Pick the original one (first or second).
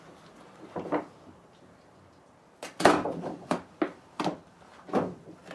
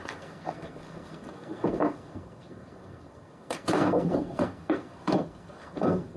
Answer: first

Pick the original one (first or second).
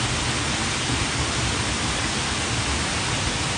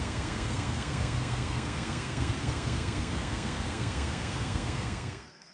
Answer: first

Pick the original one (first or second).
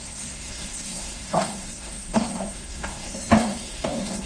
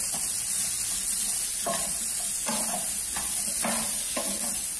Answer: second